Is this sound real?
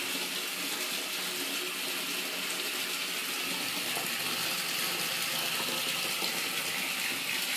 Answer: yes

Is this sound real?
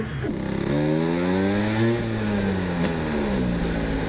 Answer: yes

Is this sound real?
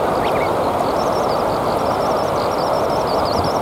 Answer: yes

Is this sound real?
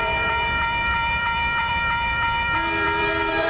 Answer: no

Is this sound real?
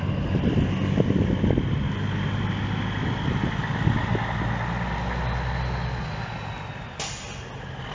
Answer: yes